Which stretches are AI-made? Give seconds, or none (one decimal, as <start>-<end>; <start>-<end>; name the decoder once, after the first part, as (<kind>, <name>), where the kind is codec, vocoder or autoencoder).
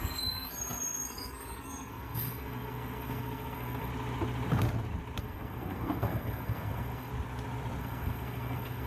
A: 0.0-3.9 (codec, SNAC); 5.2-7.1; 7.8-8.9